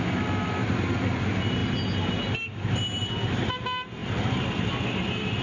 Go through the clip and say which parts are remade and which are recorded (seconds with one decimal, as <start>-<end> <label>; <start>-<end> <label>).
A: 0.0-5.4 recorded

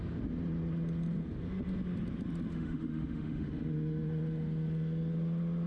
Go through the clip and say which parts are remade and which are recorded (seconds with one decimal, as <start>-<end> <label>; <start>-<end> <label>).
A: 0.0-2.5 recorded; 2.5-3.5 remade; 3.5-5.7 recorded